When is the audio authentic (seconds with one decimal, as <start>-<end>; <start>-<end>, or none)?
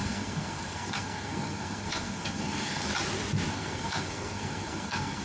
2.9-3.5